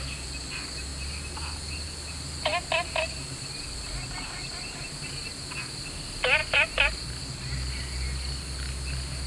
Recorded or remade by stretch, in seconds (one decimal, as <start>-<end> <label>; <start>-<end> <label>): 0.0-9.3 recorded